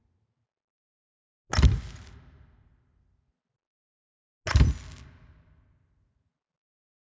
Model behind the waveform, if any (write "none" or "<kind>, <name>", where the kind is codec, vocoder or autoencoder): none